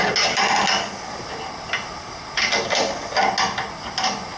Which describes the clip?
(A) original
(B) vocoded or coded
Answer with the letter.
A